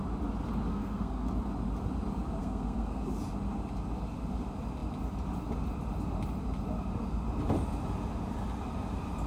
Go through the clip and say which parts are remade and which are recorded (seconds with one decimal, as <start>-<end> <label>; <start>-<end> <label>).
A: 0.0-0.7 recorded; 0.7-1.3 remade; 1.3-2.4 recorded; 2.4-3.0 remade; 3.0-9.3 recorded